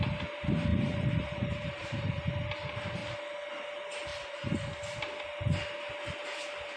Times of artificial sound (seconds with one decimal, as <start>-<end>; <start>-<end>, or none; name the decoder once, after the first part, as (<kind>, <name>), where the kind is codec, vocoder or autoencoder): 0.7-2.3 (vocoder, BigVGAN v2)